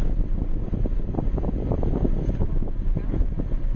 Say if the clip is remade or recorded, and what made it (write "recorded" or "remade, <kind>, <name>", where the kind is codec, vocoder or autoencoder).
recorded